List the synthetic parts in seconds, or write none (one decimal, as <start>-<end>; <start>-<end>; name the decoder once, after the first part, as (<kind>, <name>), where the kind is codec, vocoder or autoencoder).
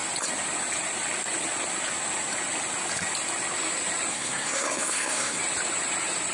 4.1-5.4 (codec, SNAC)